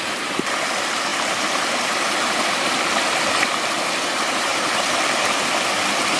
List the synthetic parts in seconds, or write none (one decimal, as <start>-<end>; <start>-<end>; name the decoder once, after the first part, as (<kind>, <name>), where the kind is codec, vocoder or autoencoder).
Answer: 1.1-2.9 (vocoder, BigVGAN v2); 4.5-5.2